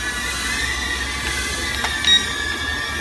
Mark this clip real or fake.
real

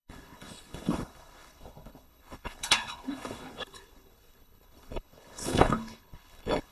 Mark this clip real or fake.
fake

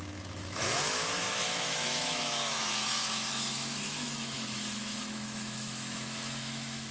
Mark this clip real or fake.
fake